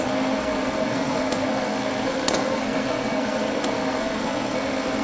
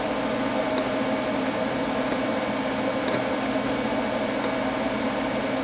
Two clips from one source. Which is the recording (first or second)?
second